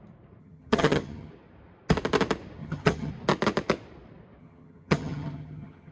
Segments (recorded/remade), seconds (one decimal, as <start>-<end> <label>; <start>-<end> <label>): 0.0-0.4 recorded; 0.4-1.3 remade; 1.3-2.6 recorded; 2.6-3.1 remade; 3.1-4.4 recorded; 4.4-5.9 remade